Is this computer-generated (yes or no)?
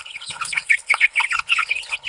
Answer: yes